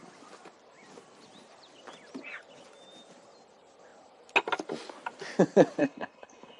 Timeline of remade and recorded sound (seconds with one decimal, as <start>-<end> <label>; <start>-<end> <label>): 0.0-5.8 recorded; 5.8-6.6 remade